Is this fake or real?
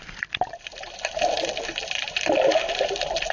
real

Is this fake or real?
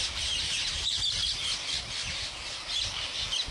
real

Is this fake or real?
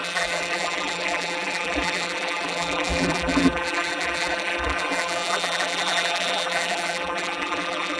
fake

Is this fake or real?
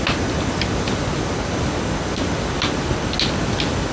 real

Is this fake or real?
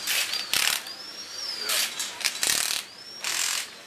fake